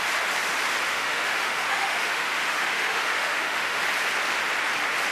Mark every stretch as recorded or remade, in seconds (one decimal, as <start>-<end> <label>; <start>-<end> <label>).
0.0-0.9 recorded; 0.9-3.8 remade; 3.8-5.1 recorded